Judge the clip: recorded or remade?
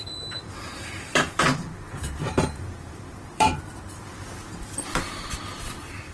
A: remade